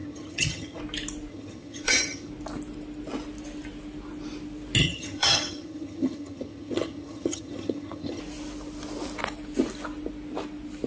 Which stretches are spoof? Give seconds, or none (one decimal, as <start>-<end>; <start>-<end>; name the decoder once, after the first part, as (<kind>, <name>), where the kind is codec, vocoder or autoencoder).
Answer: 0.0-0.8 (vocoder, HiFi-GAN); 1.3-2.3; 4.8-8.2